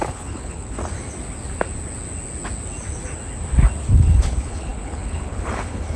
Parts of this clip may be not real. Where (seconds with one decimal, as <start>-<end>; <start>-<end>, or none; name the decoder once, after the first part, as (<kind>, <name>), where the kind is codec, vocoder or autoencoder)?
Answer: 0.0-0.8 (codec, HILCodec); 3.9-6.0